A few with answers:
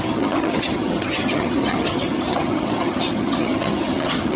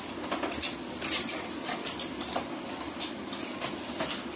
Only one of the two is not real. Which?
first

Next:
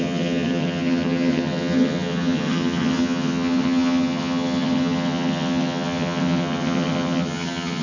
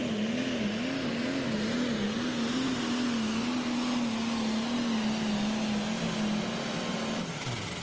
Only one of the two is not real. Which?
first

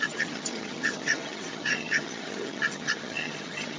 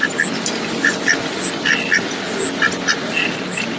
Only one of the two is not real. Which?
first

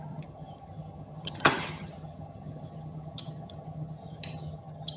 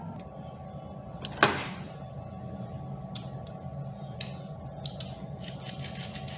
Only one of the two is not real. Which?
first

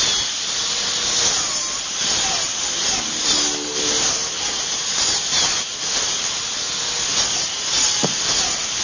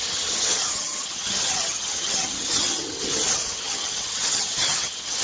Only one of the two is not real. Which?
second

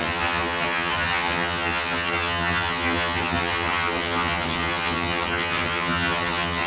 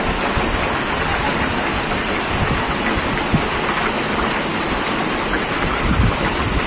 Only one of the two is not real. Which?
first